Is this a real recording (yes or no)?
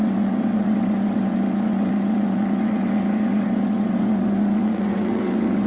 no